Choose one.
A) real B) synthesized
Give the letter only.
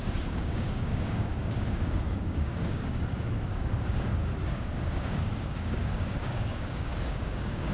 B